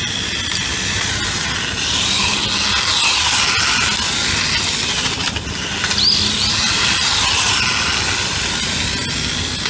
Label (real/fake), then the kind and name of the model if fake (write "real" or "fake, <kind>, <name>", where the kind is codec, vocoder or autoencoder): real